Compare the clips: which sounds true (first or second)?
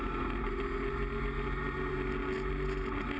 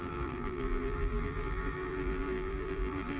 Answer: first